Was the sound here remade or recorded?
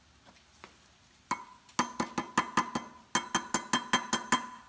recorded